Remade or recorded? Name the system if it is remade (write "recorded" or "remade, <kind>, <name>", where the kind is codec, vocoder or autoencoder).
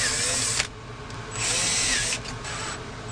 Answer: recorded